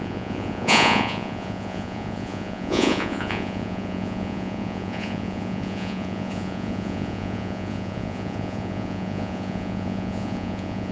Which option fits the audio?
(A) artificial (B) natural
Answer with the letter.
A